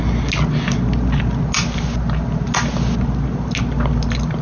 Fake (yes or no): no